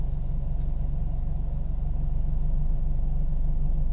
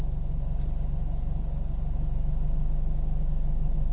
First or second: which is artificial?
first